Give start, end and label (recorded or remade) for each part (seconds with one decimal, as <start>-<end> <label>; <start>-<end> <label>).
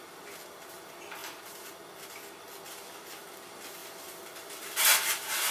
0.0-5.5 recorded